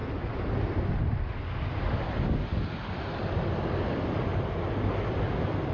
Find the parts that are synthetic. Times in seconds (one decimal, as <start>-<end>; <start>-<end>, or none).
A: none

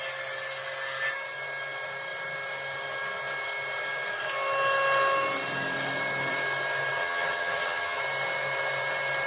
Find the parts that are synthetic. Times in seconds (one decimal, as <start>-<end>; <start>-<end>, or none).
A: 7.0-8.0

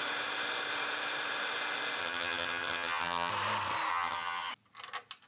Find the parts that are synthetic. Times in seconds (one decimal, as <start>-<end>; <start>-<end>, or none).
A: 2.0-3.3; 3.9-4.5

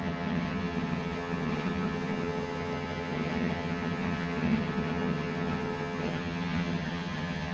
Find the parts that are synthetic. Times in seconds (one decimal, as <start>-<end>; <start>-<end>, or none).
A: 0.0-7.5

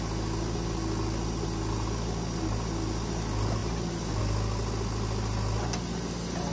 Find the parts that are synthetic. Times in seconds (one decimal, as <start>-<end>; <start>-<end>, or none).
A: none